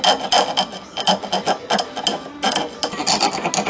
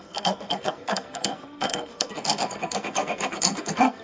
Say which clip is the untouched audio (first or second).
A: first